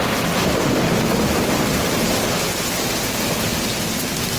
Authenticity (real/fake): real